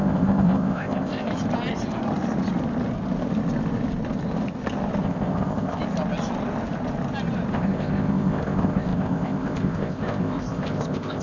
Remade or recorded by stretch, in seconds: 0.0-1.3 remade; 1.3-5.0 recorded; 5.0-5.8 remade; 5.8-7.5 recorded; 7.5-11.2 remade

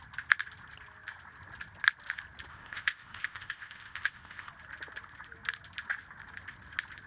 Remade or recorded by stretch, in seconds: 0.0-2.5 recorded; 2.5-4.5 remade; 4.5-7.1 recorded

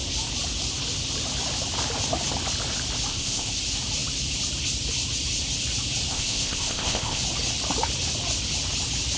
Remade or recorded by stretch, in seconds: 0.0-3.1 recorded; 3.1-3.6 remade; 3.6-6.1 recorded; 6.1-7.2 remade; 7.2-9.2 recorded